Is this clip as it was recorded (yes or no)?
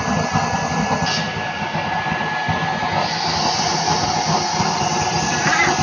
yes